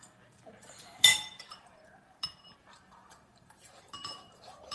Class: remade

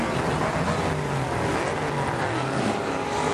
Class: recorded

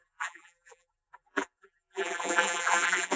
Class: remade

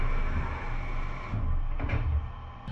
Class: recorded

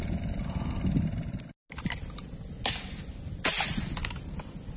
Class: recorded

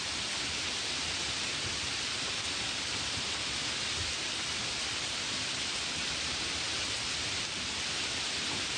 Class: remade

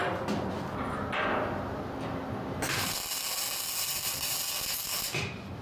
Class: recorded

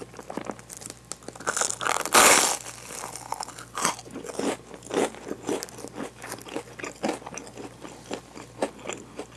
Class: recorded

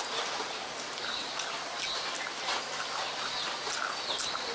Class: recorded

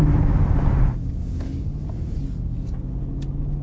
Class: recorded